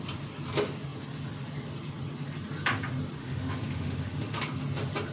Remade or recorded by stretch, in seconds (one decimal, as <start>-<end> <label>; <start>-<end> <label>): 0.0-3.2 recorded; 3.2-4.4 remade; 4.4-5.1 recorded